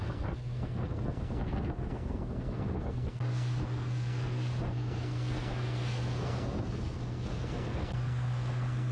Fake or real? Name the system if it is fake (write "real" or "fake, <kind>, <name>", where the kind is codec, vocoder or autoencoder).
fake, codec, SNAC